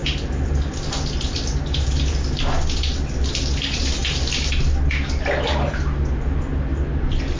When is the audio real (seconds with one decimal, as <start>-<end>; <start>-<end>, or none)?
0.0-7.4